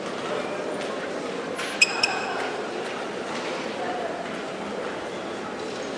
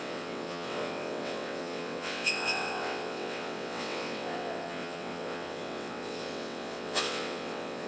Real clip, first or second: first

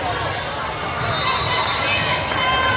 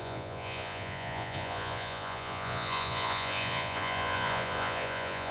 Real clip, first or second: first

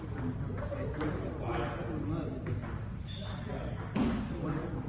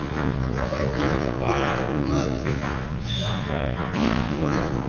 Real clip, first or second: first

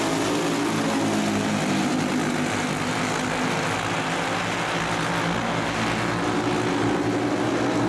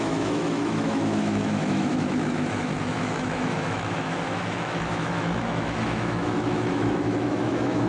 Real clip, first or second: first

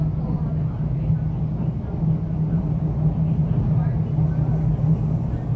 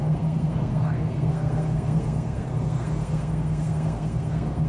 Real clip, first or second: first